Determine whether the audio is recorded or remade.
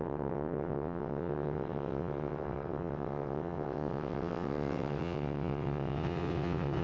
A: remade